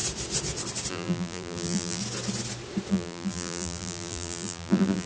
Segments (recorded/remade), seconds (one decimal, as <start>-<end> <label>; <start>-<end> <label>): 0.0-0.9 recorded; 0.9-2.0 remade; 2.0-2.9 recorded; 2.9-5.1 remade